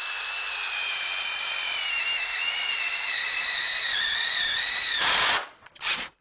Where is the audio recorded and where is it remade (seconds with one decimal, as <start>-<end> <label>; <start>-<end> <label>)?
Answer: 0.0-2.4 recorded; 2.4-6.2 remade